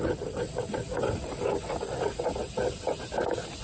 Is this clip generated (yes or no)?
no